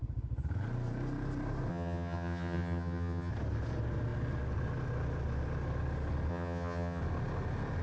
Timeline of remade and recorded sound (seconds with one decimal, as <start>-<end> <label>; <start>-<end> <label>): 0.0-1.7 recorded; 1.7-3.3 remade; 3.3-6.3 recorded; 6.3-7.0 remade; 7.0-7.8 recorded